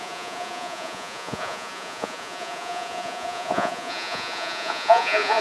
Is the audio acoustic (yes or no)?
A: no